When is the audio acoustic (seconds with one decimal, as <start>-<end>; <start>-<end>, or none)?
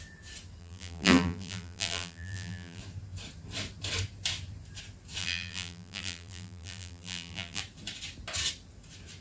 0.0-0.6; 2.8-5.2; 7.6-9.2